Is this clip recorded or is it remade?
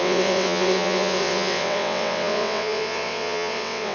remade